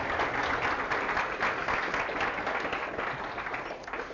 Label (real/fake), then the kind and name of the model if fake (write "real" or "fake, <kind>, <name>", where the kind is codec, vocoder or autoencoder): real